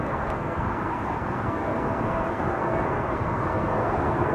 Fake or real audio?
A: fake